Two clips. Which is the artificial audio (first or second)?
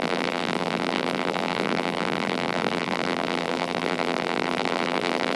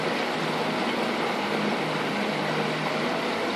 first